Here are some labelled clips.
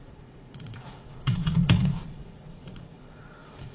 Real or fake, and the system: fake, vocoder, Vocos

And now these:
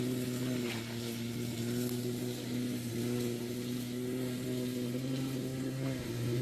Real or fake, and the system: real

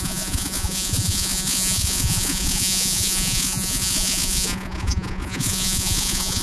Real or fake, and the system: fake, vocoder, Vocos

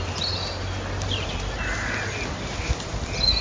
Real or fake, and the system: real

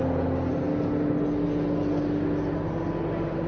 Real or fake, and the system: real